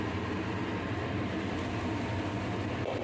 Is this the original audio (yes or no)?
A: yes